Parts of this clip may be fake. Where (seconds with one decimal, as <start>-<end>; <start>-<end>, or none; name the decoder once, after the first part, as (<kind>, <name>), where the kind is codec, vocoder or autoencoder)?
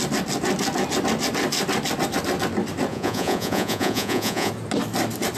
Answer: 2.9-4.5 (vocoder, Vocos)